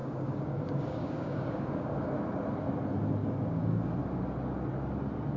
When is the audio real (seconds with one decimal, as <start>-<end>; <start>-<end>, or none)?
2.1-3.2; 3.9-5.4